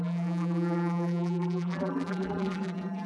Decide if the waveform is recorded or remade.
remade